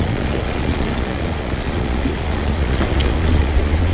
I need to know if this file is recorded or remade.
remade